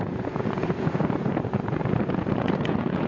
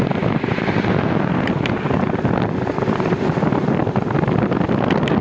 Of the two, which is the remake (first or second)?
first